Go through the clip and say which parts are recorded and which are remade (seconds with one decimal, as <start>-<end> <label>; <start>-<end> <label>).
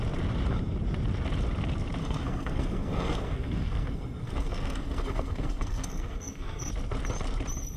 0.0-2.0 recorded; 2.0-6.7 remade; 6.7-7.8 recorded